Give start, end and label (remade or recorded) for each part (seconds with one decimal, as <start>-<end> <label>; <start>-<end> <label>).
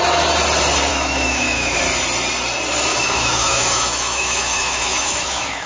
0.0-0.9 recorded; 0.9-1.8 remade; 1.8-2.9 recorded; 2.9-5.7 remade